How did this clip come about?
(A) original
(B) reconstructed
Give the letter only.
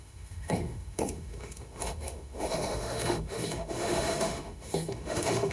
B